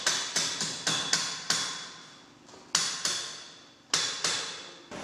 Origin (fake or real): real